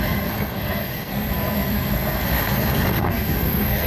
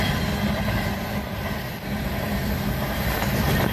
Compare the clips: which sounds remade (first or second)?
first